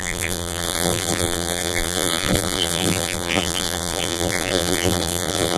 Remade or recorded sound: remade